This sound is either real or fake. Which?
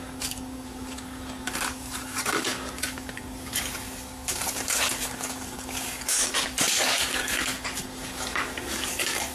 fake